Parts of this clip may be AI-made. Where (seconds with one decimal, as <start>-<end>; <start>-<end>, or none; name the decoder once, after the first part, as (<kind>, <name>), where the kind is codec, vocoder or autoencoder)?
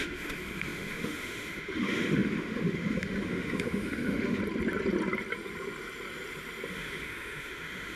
0.0-4.4 (autoencoder, DAC-VAE); 6.7-8.0